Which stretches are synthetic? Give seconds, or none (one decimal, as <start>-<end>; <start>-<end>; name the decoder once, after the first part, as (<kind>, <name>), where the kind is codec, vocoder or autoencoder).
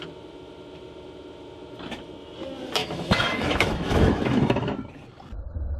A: 2.8-4.7 (autoencoder, DAC-VAE)